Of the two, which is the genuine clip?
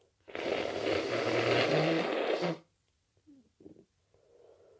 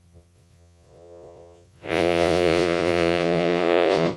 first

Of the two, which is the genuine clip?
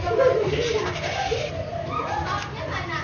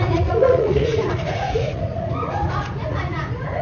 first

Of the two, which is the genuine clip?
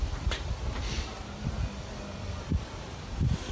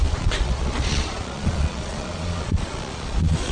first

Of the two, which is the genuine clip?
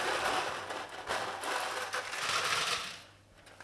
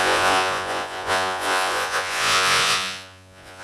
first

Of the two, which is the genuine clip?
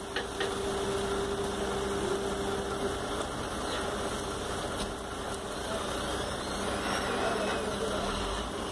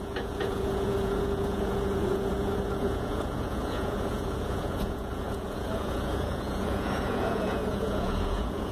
first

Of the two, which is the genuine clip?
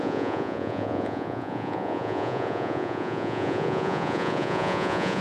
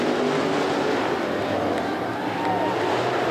second